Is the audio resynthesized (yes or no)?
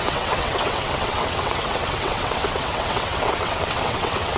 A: yes